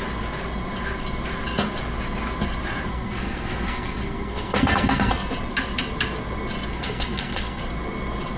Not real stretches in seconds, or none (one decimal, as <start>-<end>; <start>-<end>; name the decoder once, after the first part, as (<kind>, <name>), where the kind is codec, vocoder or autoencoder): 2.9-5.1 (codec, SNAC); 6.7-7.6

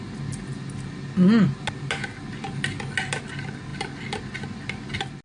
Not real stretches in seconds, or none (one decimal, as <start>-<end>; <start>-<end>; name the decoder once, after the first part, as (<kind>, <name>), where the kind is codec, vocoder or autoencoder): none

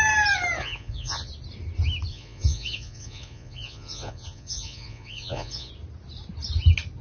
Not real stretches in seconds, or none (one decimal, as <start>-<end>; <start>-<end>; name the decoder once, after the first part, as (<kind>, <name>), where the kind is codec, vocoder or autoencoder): 0.6-1.3 (vocoder, Vocos); 2.1-5.7

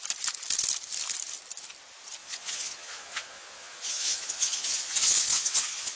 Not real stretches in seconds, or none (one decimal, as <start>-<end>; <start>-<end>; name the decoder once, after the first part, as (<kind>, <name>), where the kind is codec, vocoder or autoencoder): 2.2-6.0 (vocoder, Vocos)

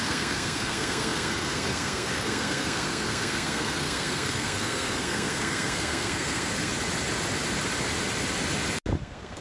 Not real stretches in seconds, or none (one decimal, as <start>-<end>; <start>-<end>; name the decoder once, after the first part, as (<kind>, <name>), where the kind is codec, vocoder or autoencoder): 0.0-6.7 (codec, SNAC); 9.0-9.4